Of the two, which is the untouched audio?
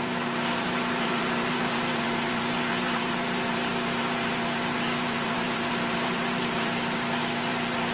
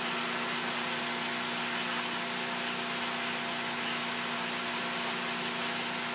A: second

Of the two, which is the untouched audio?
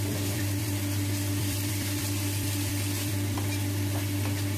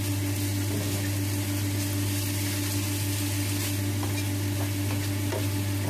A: second